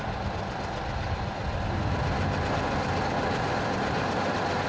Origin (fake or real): real